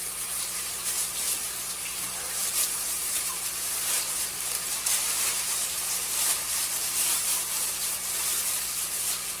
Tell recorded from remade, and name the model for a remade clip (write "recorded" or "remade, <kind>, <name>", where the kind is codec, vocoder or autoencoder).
remade, vocoder, BigVGAN v2